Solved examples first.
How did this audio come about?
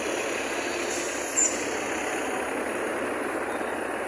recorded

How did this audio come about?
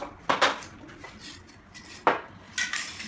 recorded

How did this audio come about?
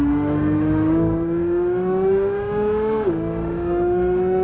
remade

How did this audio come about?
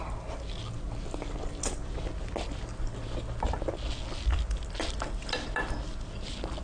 recorded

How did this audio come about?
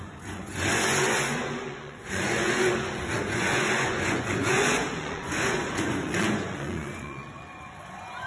remade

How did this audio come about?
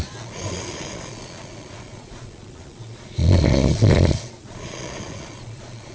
remade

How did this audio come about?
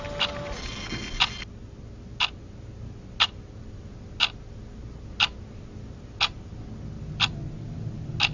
recorded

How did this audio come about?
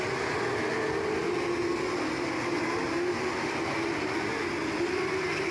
recorded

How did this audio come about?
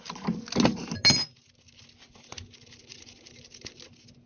recorded